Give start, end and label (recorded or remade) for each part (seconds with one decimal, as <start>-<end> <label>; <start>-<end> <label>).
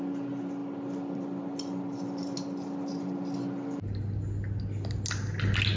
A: 0.0-5.8 recorded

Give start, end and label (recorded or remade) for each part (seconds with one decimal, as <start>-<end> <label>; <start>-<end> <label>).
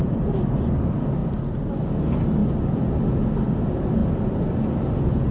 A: 0.0-0.7 remade; 0.7-5.3 recorded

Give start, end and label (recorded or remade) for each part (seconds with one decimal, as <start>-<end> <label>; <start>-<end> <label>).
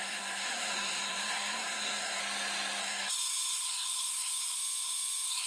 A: 0.0-2.2 remade; 2.2-2.8 recorded; 2.8-5.5 remade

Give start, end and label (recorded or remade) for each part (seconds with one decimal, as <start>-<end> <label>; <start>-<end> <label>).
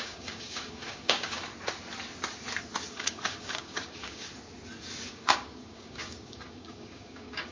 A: 0.0-1.5 remade; 1.5-2.9 recorded; 2.9-4.3 remade; 4.3-5.1 recorded; 5.1-7.5 remade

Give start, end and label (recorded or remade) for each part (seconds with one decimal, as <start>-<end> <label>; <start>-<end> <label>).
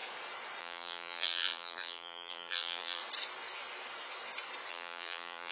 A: 0.0-0.6 recorded; 0.6-3.0 remade; 3.0-4.7 recorded; 4.7-5.5 remade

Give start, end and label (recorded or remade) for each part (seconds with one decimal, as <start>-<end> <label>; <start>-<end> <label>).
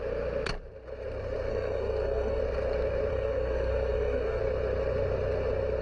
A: 0.0-1.5 recorded; 1.5-2.4 remade; 2.4-3.1 recorded; 3.1-4.4 remade; 4.4-5.8 recorded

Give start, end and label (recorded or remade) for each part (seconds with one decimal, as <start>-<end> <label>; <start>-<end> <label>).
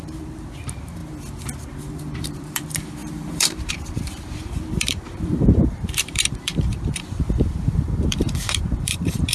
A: 0.0-1.0 remade; 1.0-1.7 recorded; 1.7-9.3 remade